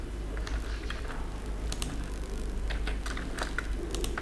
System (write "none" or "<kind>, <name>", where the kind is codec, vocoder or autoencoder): none